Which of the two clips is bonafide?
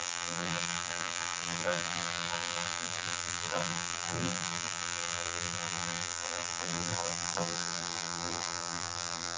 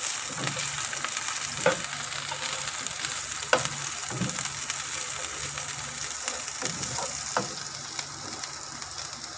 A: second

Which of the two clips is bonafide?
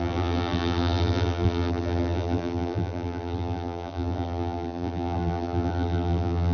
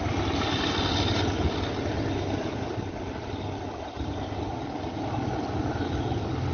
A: second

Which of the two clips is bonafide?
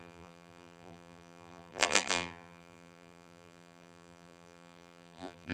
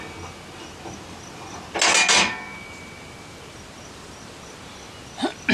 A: second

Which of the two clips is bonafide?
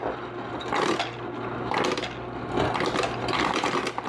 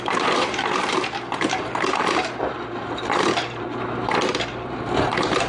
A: first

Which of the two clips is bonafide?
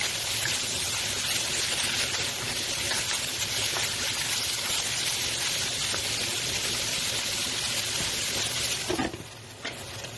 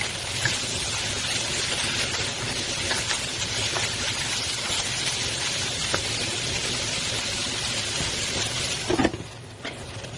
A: first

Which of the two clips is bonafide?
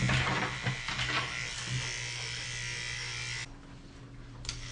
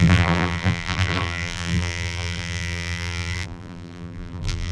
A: first